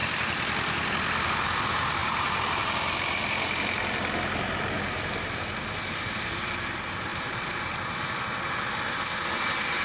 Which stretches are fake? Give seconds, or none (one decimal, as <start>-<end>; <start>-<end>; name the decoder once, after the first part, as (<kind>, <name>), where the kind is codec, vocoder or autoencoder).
2.0-2.6 (vocoder, BigVGAN v2); 7.1-8.2